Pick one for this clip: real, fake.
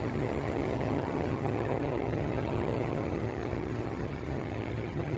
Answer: fake